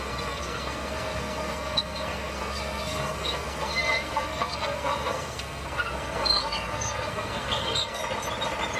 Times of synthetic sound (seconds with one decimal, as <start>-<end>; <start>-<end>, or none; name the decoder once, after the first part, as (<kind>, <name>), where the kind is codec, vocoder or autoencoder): 0.0-8.0 (codec, SNAC)